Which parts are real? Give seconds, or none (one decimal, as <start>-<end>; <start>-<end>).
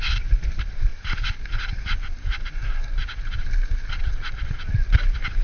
0.0-5.4